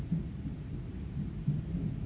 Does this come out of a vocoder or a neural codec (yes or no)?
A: no